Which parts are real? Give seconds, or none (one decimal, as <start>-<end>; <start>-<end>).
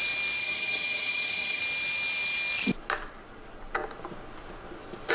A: 0.0-0.4; 1.6-5.1